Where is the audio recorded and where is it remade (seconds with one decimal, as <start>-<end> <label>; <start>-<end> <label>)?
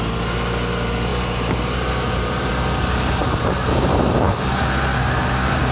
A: 0.0-1.1 recorded; 1.1-2.5 remade; 2.5-3.2 recorded; 3.2-4.6 remade; 4.6-5.7 recorded